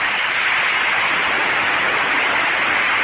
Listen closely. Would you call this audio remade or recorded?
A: recorded